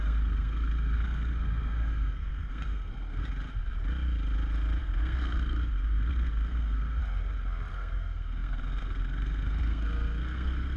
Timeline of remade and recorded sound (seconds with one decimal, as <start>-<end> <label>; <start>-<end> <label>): 0.0-3.2 remade; 3.2-4.8 recorded; 4.8-7.0 remade; 7.0-7.7 recorded; 7.7-10.8 remade